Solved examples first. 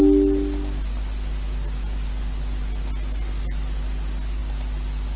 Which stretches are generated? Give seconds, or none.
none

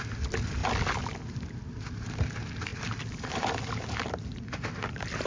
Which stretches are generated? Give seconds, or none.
none

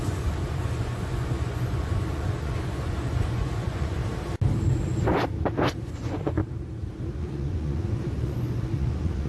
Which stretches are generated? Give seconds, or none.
0.0-4.0 (vocoder, Vocos); 5.8-6.4; 7.2-9.3

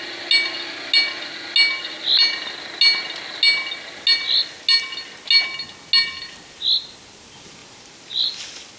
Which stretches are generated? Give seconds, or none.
7.6-8.4 (vocoder, BigVGAN v2)